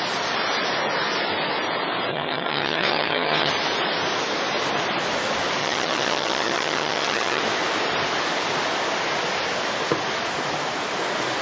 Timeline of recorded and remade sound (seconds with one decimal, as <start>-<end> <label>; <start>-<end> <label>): 0.0-2.1 recorded; 2.1-3.5 remade; 3.5-5.6 recorded; 5.6-7.4 remade; 7.4-11.4 recorded